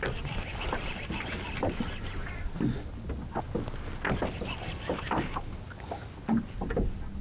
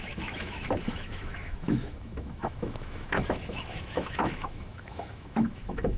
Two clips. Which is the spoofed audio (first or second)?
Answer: second